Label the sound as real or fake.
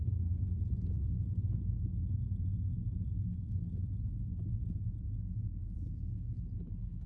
real